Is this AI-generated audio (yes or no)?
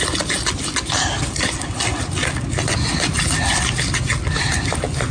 no